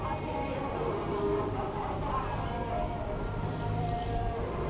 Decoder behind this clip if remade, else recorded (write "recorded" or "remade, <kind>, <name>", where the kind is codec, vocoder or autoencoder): recorded